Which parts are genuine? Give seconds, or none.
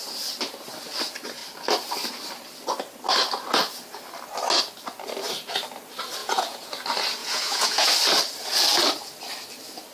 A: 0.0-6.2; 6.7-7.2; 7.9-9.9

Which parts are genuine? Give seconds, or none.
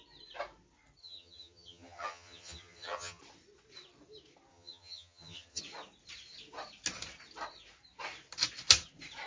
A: 0.0-1.0; 3.2-4.5; 5.6-9.3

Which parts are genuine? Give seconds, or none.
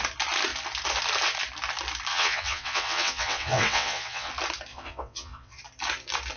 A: 0.0-2.1; 4.3-4.7; 5.6-6.4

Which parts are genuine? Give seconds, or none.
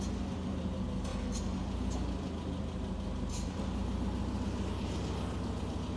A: 0.0-6.0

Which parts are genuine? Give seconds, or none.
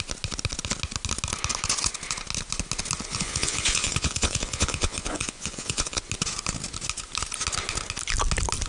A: 0.0-3.1; 6.0-8.7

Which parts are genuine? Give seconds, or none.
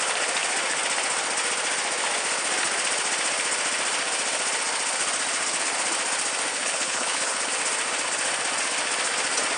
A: 0.0-6.5; 7.5-9.6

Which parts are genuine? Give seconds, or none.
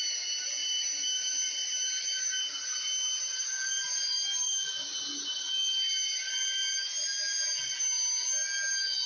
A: 0.0-0.6; 1.8-9.1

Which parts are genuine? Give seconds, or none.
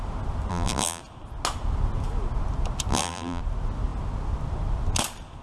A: 0.0-0.5; 1.0-2.9; 3.4-5.4